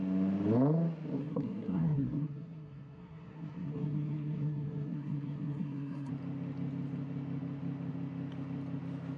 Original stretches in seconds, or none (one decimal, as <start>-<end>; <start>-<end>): 0.0-1.2; 6.1-9.2